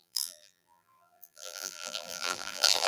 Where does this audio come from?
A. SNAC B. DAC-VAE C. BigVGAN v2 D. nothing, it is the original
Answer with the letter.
C